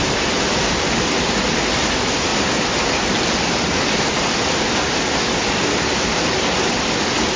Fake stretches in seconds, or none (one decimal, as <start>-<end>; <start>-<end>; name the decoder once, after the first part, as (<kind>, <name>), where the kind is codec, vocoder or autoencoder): none